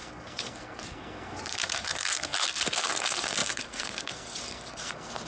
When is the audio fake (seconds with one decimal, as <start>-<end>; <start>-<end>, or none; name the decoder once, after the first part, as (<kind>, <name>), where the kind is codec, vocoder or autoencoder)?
0.0-5.3 (codec, SNAC)